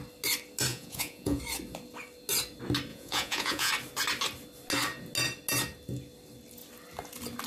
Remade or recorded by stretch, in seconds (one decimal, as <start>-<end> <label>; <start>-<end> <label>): 0.0-0.7 recorded; 0.7-1.4 remade; 1.4-2.9 recorded; 2.9-3.7 remade; 3.7-7.5 recorded